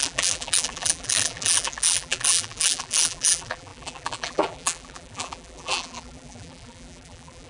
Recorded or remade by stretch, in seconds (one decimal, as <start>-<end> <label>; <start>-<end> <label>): 0.0-7.5 remade